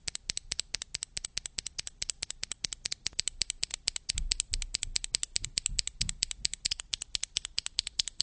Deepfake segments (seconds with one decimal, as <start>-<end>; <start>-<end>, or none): none